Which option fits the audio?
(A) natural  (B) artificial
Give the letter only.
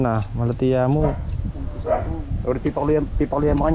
A